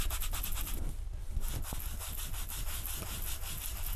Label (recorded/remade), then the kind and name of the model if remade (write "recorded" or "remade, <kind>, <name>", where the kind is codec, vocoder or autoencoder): recorded